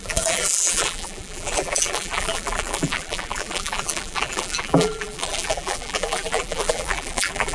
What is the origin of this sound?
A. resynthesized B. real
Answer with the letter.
A